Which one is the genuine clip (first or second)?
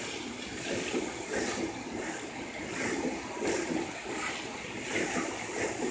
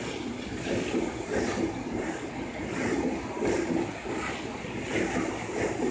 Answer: second